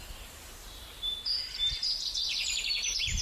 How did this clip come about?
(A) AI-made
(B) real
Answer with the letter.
A